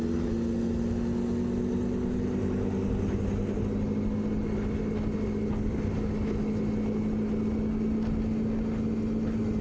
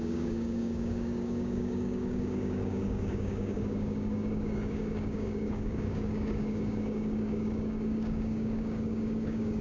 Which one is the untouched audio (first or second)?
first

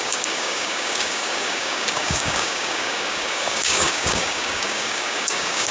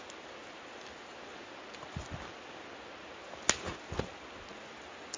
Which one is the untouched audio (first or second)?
second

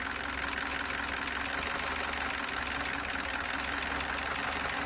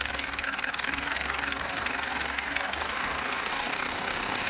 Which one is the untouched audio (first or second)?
first